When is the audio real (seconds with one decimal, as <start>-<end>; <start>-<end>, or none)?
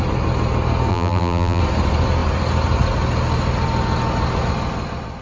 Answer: 0.0-0.9; 1.6-5.2